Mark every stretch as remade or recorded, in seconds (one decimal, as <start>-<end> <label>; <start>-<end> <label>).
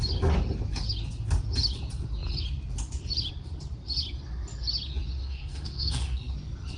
0.0-5.2 recorded; 5.2-6.3 remade; 6.3-6.8 recorded